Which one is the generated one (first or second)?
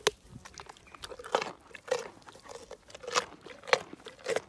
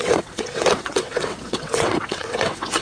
second